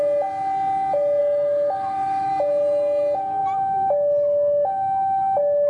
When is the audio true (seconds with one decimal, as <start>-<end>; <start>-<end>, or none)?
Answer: 0.0-1.2; 2.3-5.7